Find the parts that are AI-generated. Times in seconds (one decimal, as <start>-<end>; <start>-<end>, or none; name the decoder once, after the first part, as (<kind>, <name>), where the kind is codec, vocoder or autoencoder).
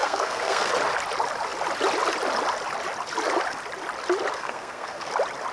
0.0-0.7 (codec, SNAC); 4.3-5.1